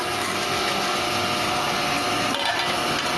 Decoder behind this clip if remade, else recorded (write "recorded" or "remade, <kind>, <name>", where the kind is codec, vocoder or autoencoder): recorded